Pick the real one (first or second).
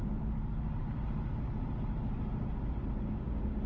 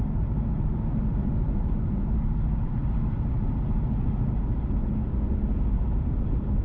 first